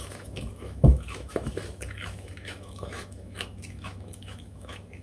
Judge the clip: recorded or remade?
remade